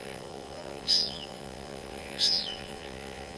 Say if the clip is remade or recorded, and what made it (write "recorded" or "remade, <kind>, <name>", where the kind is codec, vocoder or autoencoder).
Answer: remade, vocoder, WaveNeXt